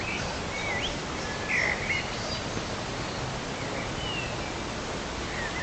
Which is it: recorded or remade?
recorded